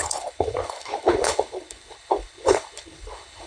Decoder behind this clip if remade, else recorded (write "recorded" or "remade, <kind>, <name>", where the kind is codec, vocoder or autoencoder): remade, codec, HILCodec